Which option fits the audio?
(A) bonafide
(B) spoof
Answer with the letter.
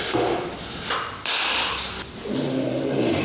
A